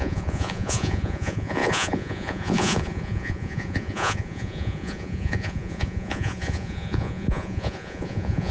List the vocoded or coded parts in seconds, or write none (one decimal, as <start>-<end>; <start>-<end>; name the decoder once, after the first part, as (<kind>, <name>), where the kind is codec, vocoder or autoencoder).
0.0-8.5 (vocoder, Vocos)